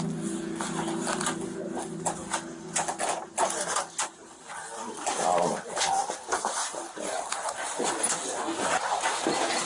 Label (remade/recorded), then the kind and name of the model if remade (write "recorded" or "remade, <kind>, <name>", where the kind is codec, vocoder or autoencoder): recorded